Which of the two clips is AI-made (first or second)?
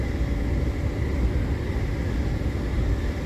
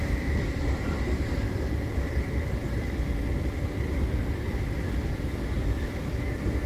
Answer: second